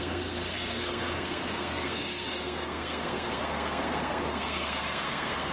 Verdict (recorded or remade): remade